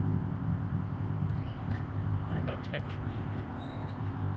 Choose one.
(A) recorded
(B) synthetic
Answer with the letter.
B